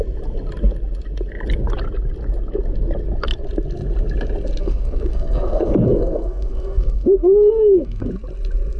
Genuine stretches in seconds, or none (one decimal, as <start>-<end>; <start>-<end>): 0.0-4.6; 8.1-8.8